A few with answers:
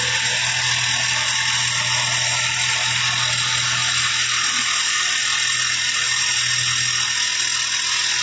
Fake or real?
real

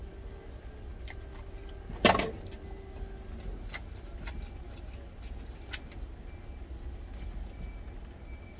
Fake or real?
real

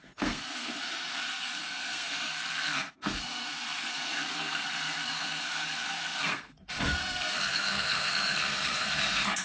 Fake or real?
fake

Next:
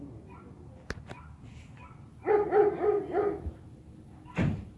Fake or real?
real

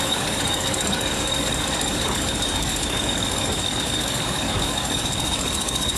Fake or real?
fake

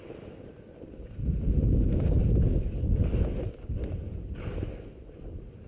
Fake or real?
real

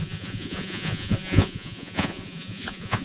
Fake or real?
fake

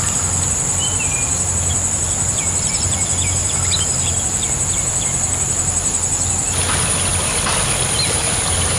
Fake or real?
real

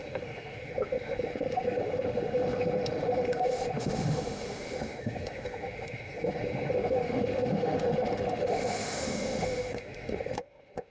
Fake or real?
fake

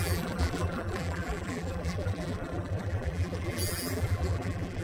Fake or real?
fake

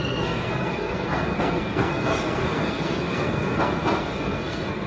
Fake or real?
fake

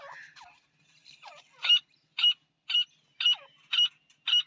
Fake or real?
real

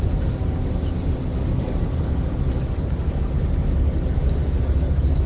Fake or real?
real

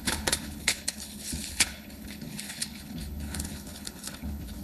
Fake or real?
fake